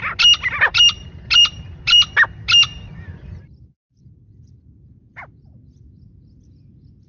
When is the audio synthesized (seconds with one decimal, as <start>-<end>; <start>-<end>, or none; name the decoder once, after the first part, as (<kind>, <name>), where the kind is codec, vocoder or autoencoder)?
0.7-5.0 (vocoder, BigVGAN v2)